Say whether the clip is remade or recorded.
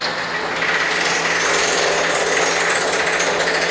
recorded